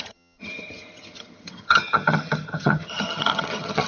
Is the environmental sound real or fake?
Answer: fake